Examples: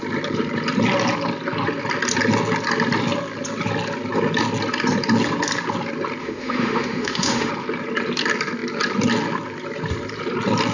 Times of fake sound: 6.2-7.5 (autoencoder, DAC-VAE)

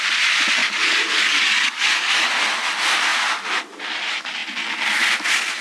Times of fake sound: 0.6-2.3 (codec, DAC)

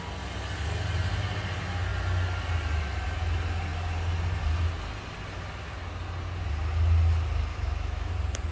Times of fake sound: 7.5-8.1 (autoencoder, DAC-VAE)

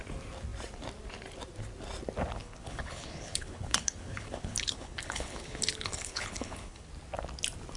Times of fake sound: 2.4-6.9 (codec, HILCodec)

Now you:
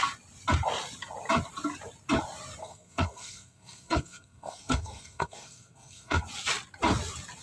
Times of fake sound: 2.6-6.2 (codec, SNAC)

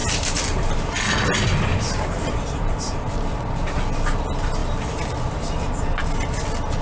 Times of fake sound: 0.0-0.9 (vocoder, BigVGAN v2); 1.7-3.1

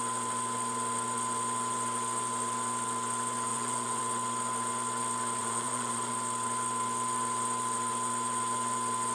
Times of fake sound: 3.5-4.0 (vocoder, Vocos); 5.4-6.1

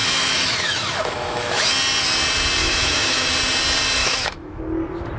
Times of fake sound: 0.0-1.7 (autoencoder, DAC-VAE); 2.6-3.3; 4.0-4.6